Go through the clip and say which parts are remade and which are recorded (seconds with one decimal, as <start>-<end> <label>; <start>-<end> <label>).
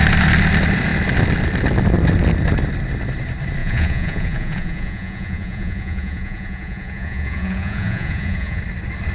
0.0-3.6 recorded; 3.6-8.6 remade; 8.6-9.1 recorded